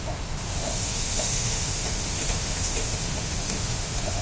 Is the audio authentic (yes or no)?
no